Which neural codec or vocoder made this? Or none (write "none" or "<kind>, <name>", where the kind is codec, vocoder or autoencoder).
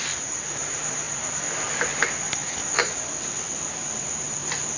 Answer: none